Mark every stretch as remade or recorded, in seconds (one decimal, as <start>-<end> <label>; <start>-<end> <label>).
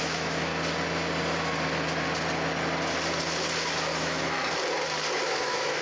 0.0-0.5 remade; 0.5-4.0 recorded; 4.0-4.4 remade; 4.4-5.2 recorded; 5.2-5.8 remade